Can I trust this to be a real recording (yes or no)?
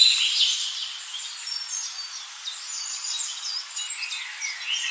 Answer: yes